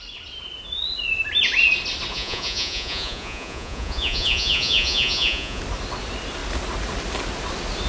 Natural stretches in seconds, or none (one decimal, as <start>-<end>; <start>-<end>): 0.0-2.1; 5.6-7.9